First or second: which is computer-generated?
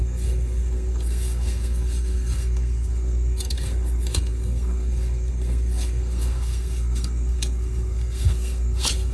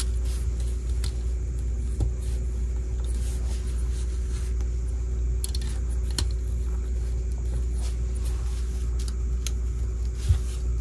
first